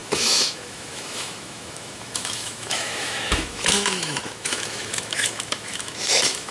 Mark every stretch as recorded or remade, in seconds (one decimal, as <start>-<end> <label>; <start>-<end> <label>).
0.0-6.5 remade